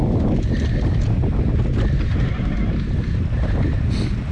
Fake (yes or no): no